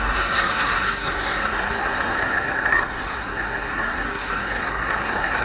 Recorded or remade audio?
remade